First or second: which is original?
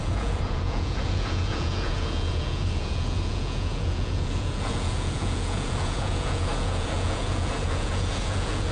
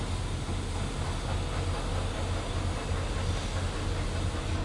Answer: second